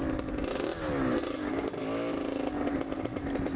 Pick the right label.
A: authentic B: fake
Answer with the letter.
A